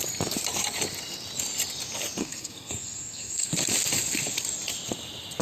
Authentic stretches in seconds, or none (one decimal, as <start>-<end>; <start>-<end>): 0.0-2.2; 3.5-5.4